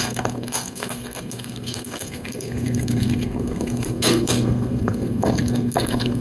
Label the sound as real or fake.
fake